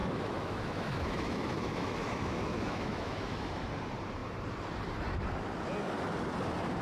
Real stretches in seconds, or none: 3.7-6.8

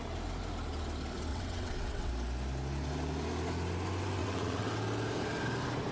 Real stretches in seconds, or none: 0.0-1.3; 2.1-4.2; 4.7-5.9

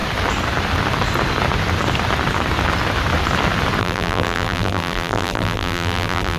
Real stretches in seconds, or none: 0.0-3.8

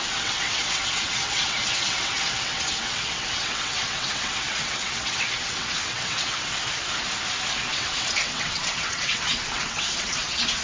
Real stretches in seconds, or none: 6.6-7.7

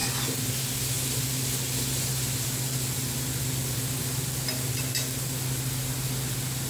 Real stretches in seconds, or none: 0.0-6.7